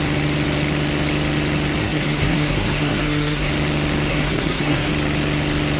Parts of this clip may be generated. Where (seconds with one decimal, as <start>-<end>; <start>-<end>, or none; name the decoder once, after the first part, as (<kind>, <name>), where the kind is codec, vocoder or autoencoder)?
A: 1.8-3.5 (codec, SNAC); 4.1-4.9